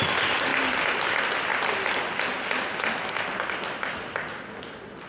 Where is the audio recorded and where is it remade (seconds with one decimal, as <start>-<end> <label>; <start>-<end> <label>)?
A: 0.0-5.1 recorded